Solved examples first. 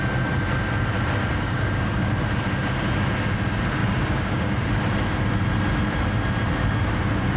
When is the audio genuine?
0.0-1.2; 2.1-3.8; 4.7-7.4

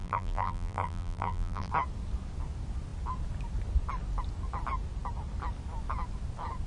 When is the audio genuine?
1.7-6.7